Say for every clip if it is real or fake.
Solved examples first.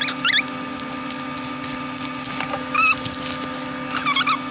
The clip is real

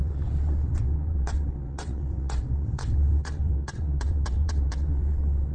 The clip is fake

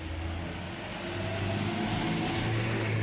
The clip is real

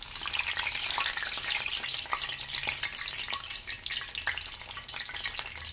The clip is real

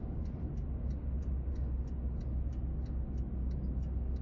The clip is real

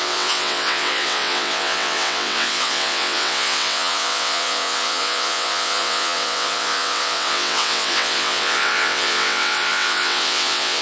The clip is fake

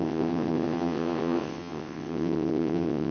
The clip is fake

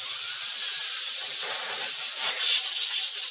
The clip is real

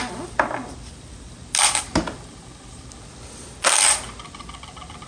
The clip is real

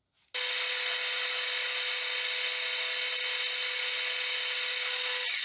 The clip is real